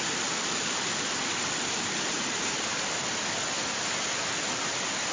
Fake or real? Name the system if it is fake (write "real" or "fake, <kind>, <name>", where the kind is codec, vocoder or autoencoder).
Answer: real